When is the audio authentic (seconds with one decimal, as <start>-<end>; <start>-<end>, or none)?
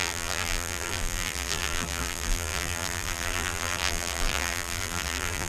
none